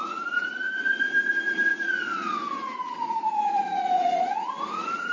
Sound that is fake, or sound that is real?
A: fake